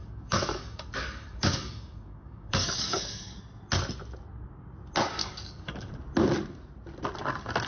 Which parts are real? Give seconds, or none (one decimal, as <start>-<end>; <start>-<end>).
3.4-5.2; 5.9-7.7

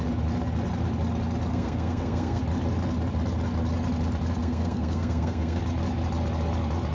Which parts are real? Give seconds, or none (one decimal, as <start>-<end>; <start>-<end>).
0.0-1.5; 2.4-4.4; 5.6-6.9

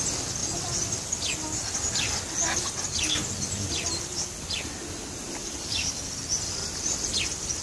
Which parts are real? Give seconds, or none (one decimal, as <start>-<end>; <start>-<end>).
0.0-7.6

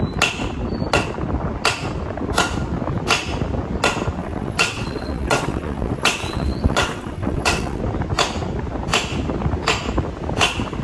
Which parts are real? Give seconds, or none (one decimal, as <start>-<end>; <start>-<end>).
0.0-4.2; 7.8-10.8

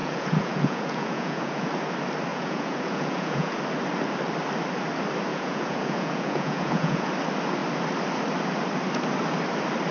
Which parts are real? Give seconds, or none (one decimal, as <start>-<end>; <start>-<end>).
1.7-2.3; 3.6-5.3; 7.1-9.9